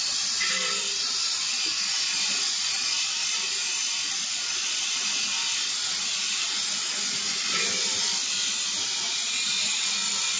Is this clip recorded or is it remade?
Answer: remade